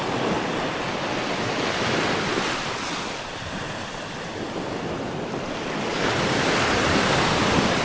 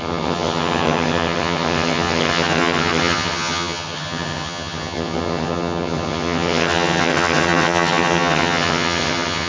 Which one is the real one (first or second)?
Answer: first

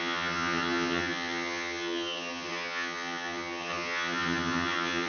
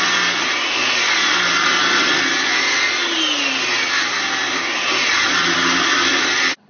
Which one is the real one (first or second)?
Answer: second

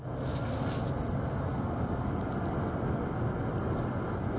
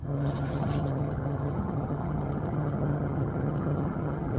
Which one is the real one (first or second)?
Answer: first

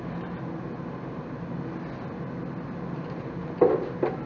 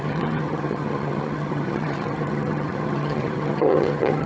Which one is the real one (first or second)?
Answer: first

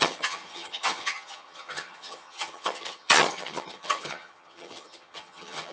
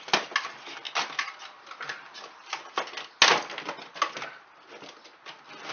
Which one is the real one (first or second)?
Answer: second